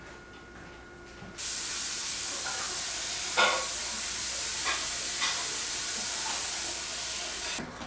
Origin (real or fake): real